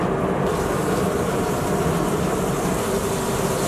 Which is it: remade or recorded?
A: recorded